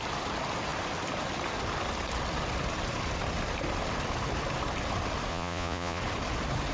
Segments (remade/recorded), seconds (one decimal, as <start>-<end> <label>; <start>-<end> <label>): 0.0-5.3 recorded; 5.3-6.0 remade; 6.0-6.7 recorded